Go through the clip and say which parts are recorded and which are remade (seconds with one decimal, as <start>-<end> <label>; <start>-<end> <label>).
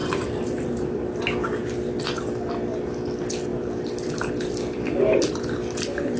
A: 0.0-6.2 recorded